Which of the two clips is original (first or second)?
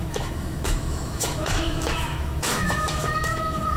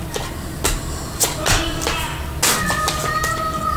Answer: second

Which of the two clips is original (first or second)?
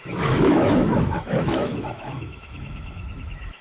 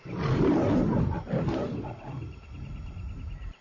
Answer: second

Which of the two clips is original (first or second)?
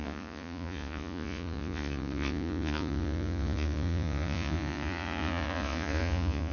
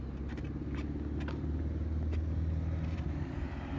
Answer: second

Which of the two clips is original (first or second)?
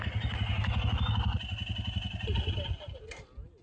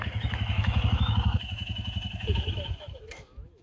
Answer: first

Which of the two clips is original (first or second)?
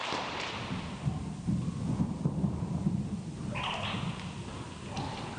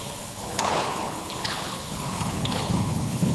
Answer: first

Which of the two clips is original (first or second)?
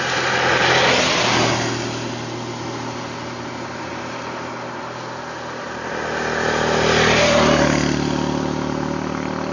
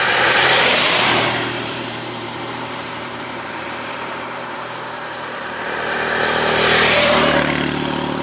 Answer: first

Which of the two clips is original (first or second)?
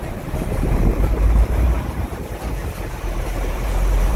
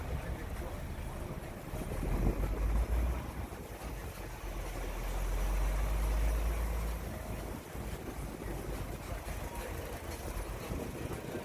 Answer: second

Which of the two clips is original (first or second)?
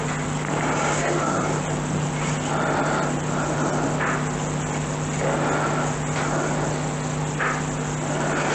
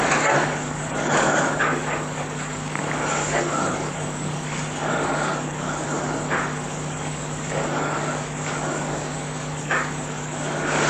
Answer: first